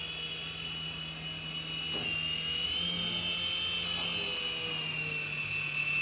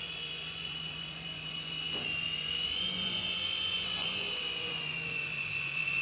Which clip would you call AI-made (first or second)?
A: second